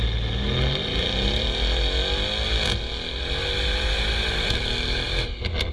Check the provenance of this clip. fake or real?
real